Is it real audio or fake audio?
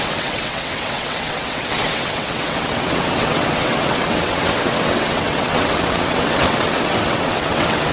fake